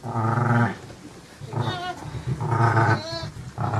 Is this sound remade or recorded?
recorded